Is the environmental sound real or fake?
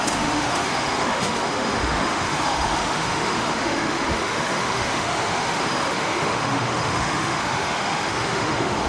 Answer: fake